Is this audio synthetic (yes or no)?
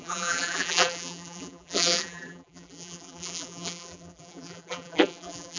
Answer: yes